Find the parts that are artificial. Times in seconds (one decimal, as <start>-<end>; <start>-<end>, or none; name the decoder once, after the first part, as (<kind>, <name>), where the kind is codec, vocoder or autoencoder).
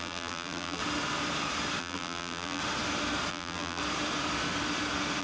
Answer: 0.0-0.8 (vocoder, BigVGAN v2); 1.8-2.6; 3.3-3.8